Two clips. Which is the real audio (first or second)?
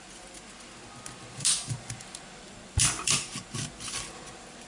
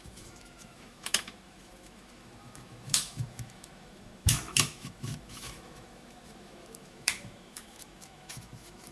first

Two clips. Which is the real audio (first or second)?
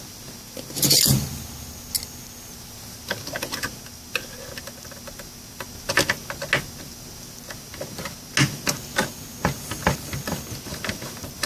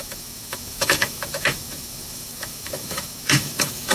first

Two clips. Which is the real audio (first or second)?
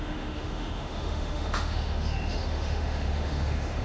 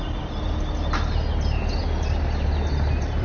second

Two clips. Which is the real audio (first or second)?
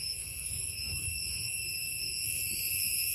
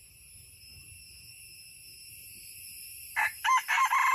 second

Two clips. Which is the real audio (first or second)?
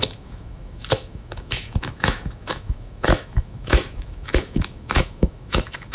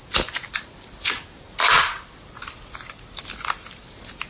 second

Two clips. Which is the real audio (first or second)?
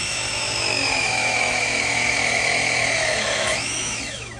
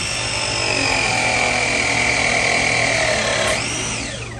second